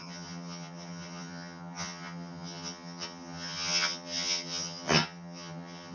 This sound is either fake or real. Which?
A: fake